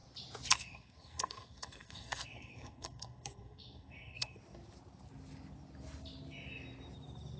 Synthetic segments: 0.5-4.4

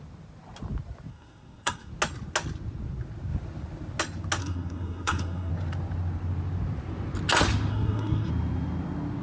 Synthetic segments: 1.1-1.9; 4.4-5.5; 7.7-8.3

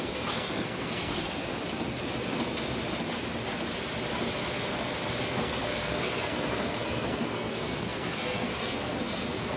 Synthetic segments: 0.0-1.5; 5.2-9.6